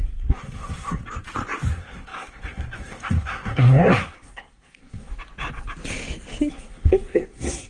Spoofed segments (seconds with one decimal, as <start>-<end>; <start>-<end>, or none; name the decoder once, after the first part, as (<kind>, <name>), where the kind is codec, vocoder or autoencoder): 0.0-1.0 (codec, SNAC); 1.7-5.1; 6.5-7.7